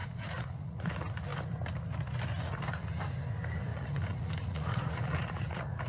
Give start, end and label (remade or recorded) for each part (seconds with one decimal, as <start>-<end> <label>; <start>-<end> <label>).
0.0-0.9 remade; 0.9-3.7 recorded; 3.7-5.9 remade